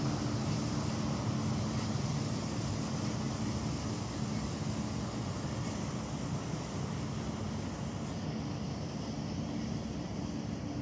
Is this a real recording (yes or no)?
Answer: yes